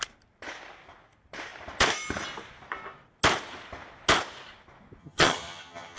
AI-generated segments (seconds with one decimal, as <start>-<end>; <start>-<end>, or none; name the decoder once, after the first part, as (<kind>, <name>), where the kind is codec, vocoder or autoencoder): 5.0-6.0 (vocoder, HiFi-GAN)